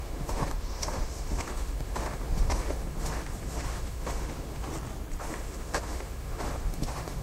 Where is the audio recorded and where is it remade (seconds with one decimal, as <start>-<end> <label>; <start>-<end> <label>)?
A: 0.0-4.7 remade; 4.7-5.2 recorded; 5.2-7.2 remade